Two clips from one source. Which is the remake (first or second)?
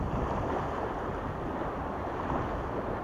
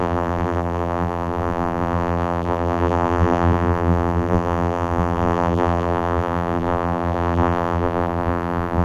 second